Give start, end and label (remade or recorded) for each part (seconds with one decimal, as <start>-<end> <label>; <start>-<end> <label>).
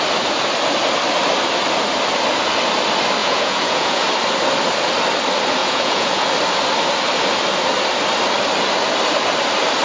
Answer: 0.0-3.2 recorded; 3.2-4.1 remade; 4.1-5.6 recorded; 5.6-6.3 remade; 6.3-9.8 recorded